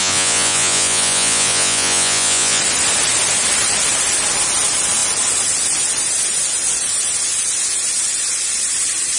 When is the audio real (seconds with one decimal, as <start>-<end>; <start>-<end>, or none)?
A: 2.6-9.2

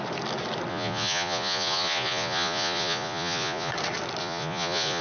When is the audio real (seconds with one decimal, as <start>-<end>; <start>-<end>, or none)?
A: 0.0-0.7; 3.7-4.2

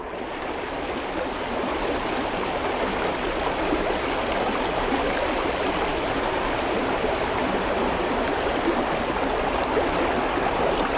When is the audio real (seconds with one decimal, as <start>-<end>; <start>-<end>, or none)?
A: 0.0-11.0

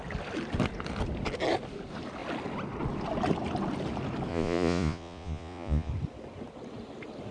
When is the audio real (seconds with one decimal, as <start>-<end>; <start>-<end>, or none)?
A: 0.0-4.3; 5.9-7.3

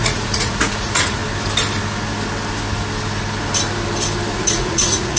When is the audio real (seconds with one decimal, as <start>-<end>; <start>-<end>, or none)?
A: 1.2-4.3

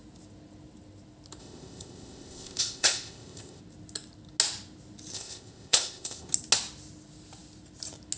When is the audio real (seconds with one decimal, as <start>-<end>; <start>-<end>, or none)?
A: 0.0-1.4; 3.6-5.1; 6.3-8.2

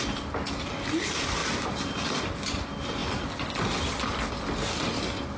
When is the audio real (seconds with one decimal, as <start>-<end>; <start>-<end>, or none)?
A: 0.0-5.4